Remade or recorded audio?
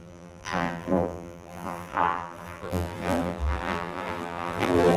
remade